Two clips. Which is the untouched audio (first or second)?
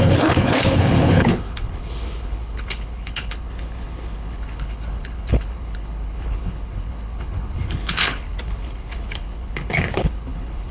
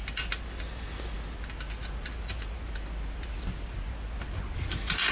second